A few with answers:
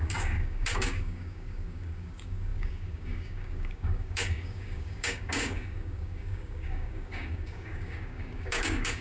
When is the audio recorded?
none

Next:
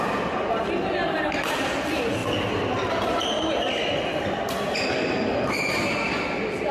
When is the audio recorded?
0.0-6.7

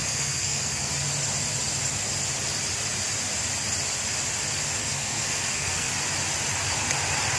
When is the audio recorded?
0.9-4.8; 5.9-7.4

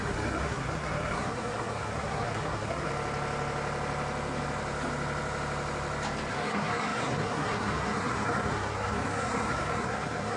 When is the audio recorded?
2.9-6.3